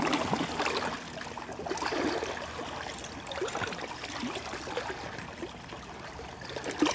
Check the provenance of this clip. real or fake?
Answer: real